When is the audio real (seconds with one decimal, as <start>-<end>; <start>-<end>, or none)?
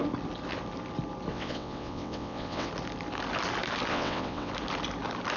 0.0-1.3; 2.7-3.9; 4.5-5.4